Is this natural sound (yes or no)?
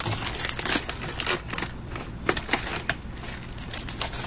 yes